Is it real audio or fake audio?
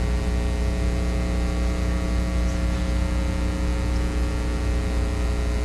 real